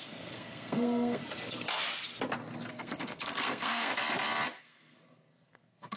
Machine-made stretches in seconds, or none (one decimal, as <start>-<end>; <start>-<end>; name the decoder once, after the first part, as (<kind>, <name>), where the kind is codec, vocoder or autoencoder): 0.0-1.2 (codec, SNAC); 2.7-3.9; 4.6-6.0